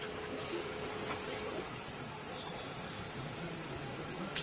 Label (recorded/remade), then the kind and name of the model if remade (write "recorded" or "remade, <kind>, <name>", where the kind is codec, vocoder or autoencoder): recorded